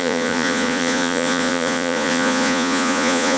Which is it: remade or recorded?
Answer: remade